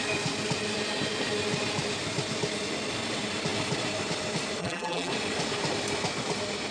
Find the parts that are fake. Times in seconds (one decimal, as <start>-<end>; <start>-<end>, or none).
4.6-5.1

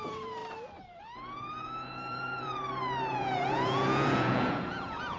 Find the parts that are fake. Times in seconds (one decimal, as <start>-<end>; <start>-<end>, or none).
0.0-0.4; 1.0-2.6; 3.1-5.2

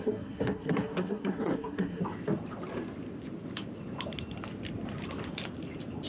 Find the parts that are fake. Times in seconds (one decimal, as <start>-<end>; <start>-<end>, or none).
0.0-2.0

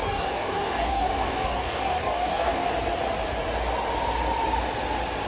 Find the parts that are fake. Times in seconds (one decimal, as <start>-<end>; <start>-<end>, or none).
0.0-2.6

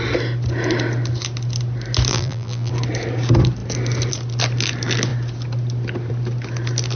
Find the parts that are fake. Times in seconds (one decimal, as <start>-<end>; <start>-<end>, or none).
2.1-2.7

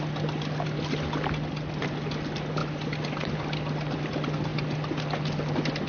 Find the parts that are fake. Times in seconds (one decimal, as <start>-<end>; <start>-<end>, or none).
none